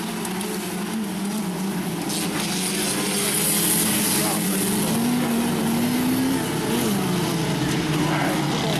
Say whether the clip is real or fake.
real